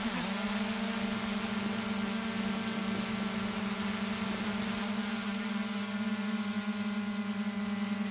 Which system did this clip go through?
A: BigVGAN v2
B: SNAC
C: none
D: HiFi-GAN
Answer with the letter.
C